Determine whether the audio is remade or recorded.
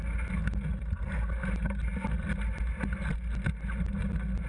recorded